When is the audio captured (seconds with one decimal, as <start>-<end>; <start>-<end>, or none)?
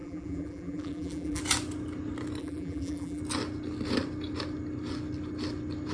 1.4-2.4; 3.2-5.9